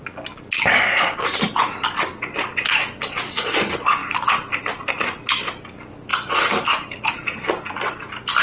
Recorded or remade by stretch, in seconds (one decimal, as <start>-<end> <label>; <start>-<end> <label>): 0.0-8.4 recorded